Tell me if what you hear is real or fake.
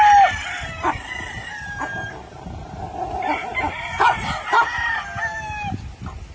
real